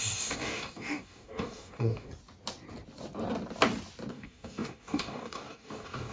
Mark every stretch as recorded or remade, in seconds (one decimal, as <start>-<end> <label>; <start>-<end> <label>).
0.0-2.1 remade; 2.1-4.1 recorded; 4.1-6.1 remade